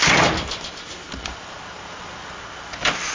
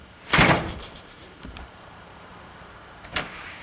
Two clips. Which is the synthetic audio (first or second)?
second